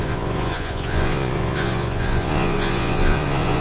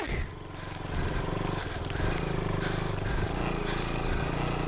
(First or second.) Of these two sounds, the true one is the second